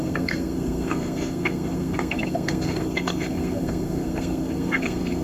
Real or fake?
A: fake